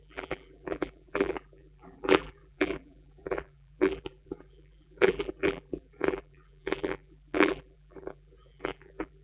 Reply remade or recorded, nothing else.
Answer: remade